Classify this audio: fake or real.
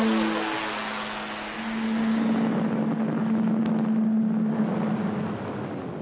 real